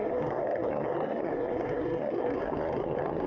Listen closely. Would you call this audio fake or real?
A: fake